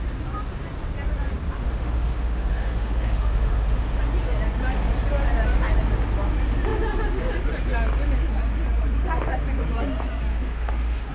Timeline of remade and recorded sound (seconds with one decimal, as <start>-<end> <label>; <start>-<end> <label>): 0.0-1.6 recorded; 1.6-4.0 remade; 4.0-10.3 recorded; 10.3-11.1 remade